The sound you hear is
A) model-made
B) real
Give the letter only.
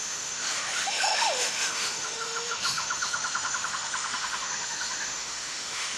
A